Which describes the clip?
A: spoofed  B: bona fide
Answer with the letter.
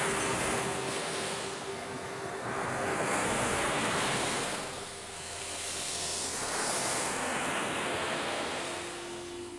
A